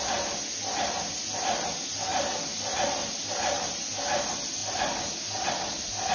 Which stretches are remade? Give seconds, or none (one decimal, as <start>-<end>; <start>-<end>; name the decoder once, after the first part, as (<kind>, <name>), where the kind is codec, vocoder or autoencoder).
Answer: none